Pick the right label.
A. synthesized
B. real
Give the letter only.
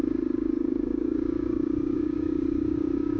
A